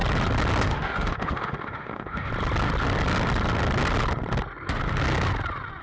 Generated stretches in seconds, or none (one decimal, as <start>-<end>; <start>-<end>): 0.6-2.3